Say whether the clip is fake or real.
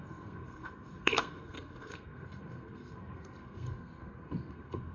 fake